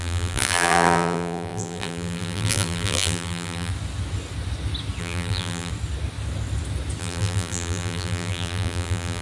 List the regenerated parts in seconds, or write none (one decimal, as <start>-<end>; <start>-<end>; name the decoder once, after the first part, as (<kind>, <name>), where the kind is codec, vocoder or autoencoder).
0.0-3.7 (vocoder, BigVGAN v2); 5.0-5.7; 7.0-9.2